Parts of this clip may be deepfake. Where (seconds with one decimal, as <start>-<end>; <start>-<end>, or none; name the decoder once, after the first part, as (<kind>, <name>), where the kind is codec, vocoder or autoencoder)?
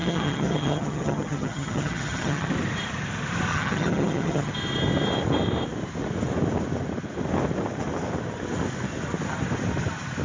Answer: 0.0-2.5 (vocoder, HiFi-GAN); 3.5-4.5